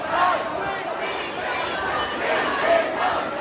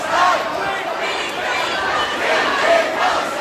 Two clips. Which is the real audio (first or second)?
first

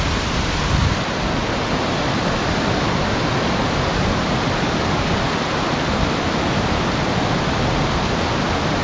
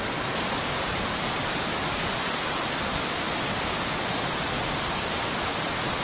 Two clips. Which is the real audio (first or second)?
first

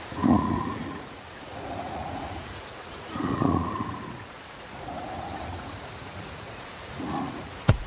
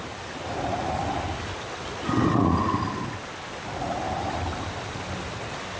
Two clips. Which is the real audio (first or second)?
second